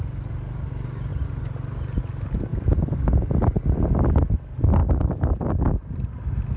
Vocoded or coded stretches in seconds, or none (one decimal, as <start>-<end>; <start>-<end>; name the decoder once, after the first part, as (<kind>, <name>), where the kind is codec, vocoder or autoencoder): none